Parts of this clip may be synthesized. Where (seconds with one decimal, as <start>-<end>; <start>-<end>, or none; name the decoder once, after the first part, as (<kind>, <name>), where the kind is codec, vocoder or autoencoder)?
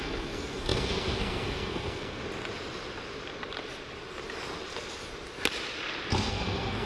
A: 0.0-2.2 (codec, SNAC); 6.3-6.9